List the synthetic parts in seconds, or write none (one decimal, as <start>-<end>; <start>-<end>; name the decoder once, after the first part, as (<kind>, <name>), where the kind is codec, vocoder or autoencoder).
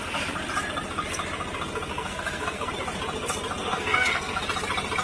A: 1.9-2.7 (codec, SNAC); 3.6-4.4